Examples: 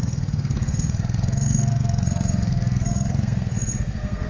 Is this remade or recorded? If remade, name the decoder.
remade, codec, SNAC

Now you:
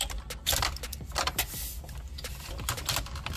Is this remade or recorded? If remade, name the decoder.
recorded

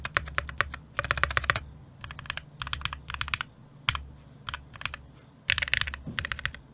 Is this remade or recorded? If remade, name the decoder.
recorded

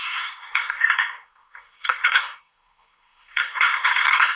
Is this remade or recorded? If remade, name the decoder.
remade, codec, SNAC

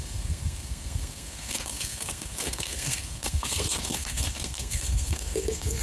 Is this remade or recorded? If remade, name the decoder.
remade, codec, SNAC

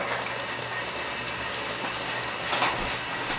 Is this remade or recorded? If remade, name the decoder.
recorded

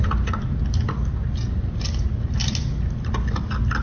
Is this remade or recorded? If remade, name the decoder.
recorded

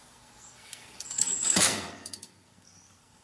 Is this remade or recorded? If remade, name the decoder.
remade, codec, SNAC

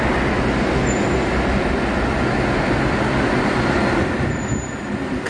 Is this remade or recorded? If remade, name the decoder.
recorded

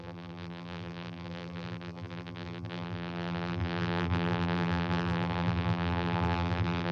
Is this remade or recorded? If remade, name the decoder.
remade, vocoder, BigVGAN v2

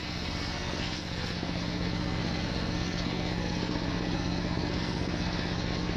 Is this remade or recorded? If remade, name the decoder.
remade, codec, SNAC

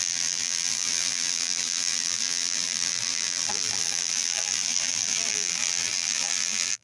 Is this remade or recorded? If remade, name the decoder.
remade, vocoder, BigVGAN v2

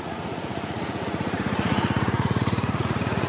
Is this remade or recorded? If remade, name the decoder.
remade, vocoder, Vocos